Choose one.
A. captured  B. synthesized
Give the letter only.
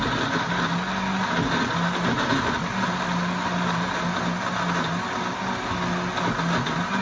A